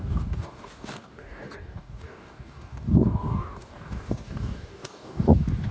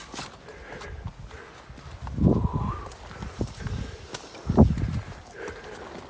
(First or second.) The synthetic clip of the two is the first